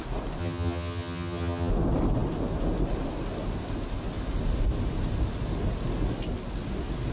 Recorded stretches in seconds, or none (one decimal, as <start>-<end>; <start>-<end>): 0.0-0.4; 1.7-7.1